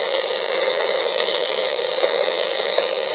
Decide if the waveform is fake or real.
fake